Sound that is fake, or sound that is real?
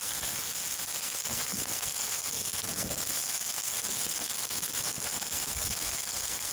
fake